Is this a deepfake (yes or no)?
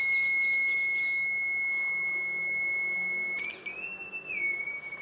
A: no